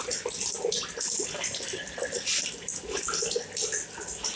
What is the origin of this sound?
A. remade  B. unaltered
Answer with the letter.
B